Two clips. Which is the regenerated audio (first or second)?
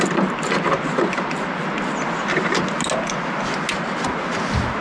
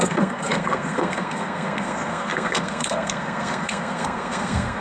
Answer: second